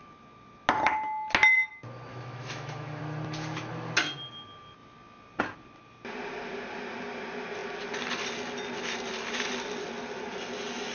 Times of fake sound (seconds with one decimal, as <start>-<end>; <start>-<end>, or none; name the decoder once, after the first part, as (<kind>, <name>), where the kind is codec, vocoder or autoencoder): 2.1-3.0 (autoencoder, DAC-VAE)